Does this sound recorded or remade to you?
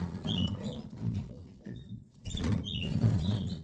remade